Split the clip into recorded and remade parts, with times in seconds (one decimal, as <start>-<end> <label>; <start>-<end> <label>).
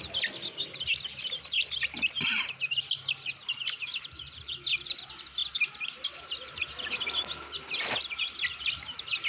0.0-9.3 recorded